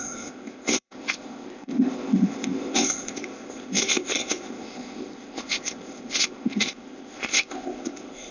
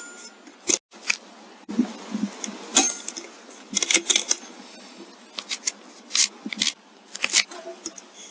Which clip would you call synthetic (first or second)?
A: first